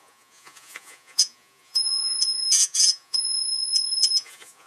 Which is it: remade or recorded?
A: remade